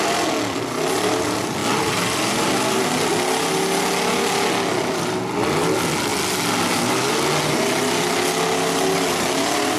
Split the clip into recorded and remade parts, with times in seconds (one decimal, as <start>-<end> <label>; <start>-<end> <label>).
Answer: 0.0-9.8 recorded